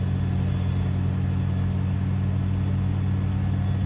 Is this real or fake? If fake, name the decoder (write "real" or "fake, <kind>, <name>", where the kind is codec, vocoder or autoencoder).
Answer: real